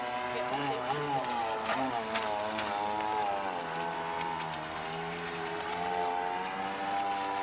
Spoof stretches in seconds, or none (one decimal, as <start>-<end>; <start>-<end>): none